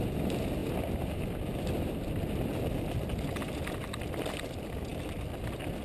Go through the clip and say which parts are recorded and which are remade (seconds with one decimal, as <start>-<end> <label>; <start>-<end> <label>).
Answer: 0.0-5.8 recorded